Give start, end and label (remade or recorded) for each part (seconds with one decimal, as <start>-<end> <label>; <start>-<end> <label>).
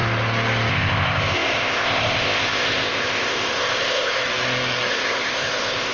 0.0-0.7 recorded; 0.7-4.2 remade; 4.2-4.9 recorded; 4.9-5.9 remade